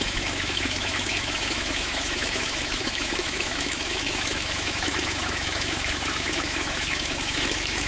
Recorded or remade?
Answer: remade